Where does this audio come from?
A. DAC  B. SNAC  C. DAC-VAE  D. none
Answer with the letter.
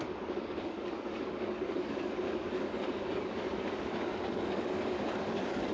A